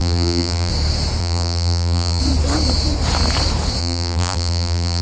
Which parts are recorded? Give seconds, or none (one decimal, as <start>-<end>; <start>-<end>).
0.7-1.2; 2.2-3.8